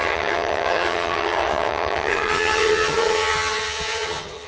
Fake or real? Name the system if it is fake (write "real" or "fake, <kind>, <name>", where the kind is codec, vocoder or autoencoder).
fake, vocoder, HiFi-GAN